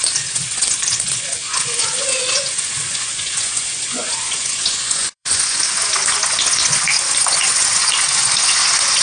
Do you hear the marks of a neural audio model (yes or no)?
yes